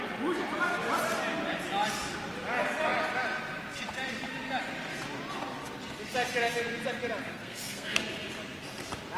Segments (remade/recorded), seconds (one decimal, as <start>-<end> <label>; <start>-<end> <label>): 0.0-7.3 recorded; 7.3-8.0 remade; 8.0-9.2 recorded